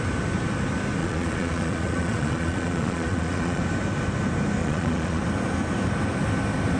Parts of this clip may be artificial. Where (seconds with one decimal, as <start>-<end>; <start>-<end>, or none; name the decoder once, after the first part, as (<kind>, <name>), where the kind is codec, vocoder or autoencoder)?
1.0-3.6 (vocoder, Vocos); 4.6-5.2

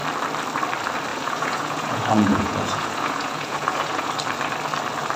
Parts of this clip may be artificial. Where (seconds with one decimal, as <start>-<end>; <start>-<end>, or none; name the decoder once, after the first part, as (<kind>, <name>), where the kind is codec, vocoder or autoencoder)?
1.1-4.1 (vocoder, Vocos)

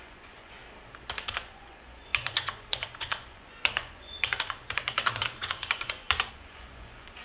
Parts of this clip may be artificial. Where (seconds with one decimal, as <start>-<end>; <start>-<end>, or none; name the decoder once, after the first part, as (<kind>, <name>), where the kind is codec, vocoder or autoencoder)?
0.0-0.6 (vocoder, Vocos); 1.3-7.2

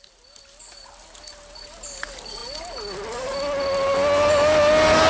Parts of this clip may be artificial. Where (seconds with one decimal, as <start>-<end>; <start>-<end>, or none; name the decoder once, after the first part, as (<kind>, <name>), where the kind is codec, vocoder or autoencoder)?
none

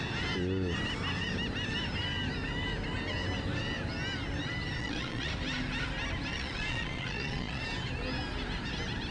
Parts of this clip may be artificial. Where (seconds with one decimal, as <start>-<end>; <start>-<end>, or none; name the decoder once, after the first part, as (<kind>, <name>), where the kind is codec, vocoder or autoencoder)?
4.8-5.3 (vocoder, Vocos); 6.3-7.6

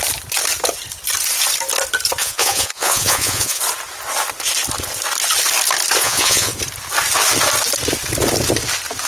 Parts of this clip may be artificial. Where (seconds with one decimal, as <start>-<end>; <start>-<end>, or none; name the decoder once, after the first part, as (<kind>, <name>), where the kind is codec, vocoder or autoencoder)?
2.2-3.6 (vocoder, Vocos); 6.0-6.6